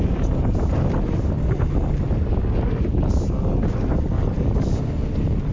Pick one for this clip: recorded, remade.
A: recorded